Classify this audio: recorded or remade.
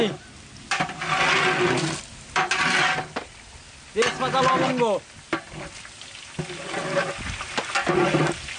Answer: recorded